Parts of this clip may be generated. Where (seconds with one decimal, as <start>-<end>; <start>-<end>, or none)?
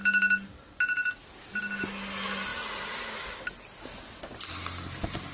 none